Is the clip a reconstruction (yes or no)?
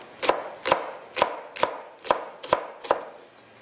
no